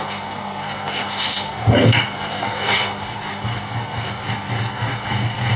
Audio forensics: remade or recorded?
remade